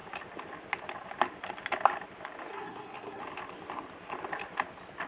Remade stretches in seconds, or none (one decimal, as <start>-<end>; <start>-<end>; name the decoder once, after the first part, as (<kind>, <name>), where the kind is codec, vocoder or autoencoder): 2.5-3.2 (codec, SNAC)